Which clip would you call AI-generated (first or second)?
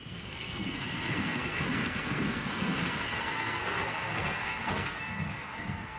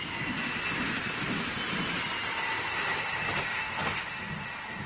first